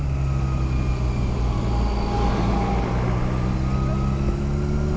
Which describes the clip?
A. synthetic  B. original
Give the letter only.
B